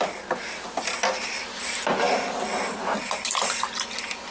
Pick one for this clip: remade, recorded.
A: recorded